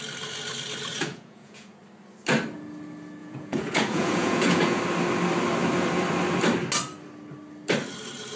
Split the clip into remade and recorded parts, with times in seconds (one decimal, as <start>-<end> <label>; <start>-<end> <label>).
0.0-0.9 recorded; 0.9-1.8 remade; 1.8-3.2 recorded; 3.2-4.8 remade; 4.8-8.4 recorded